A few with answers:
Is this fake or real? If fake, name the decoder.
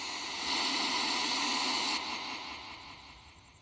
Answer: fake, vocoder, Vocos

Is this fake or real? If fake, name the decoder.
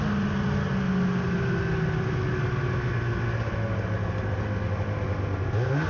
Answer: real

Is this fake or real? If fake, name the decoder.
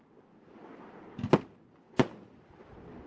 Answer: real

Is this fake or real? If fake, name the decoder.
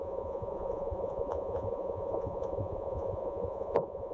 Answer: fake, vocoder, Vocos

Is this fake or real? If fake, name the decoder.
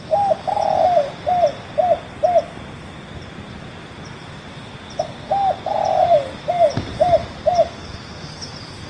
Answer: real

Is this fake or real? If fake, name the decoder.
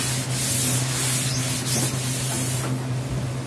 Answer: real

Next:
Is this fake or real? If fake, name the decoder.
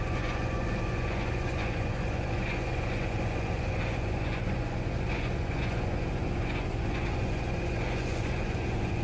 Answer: fake, vocoder, Vocos